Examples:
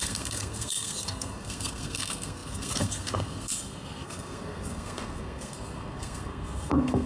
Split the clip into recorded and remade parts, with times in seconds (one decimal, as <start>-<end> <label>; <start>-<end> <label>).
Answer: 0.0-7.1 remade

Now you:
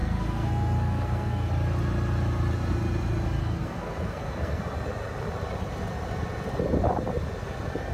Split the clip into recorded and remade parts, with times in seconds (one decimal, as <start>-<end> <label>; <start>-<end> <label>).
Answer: 0.0-1.5 remade; 1.5-3.4 recorded; 3.4-4.6 remade; 4.6-7.9 recorded

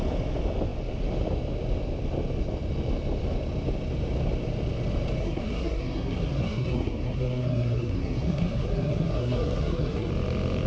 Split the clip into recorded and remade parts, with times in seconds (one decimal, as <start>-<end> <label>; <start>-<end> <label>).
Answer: 0.0-5.2 recorded; 5.2-10.1 remade; 10.1-10.7 recorded

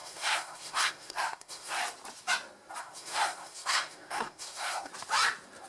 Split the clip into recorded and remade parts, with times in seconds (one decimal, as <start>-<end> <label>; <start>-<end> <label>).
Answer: 0.0-1.8 remade; 1.8-2.8 recorded; 2.8-4.9 remade; 4.9-5.7 recorded

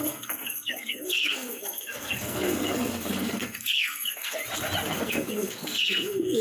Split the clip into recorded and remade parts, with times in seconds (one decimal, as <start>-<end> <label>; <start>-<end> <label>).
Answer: 0.0-4.4 remade; 4.4-4.9 recorded; 4.9-6.4 remade

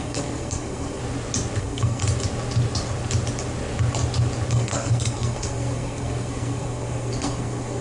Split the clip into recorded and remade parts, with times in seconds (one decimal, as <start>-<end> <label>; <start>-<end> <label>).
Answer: 0.0-1.0 remade; 1.0-1.6 recorded; 1.6-2.0 remade; 2.0-4.5 recorded; 4.5-7.8 remade

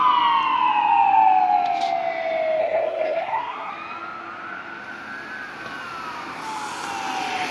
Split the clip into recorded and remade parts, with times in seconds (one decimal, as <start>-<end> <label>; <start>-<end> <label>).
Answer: 0.0-2.6 recorded; 2.6-3.7 remade; 3.7-7.5 recorded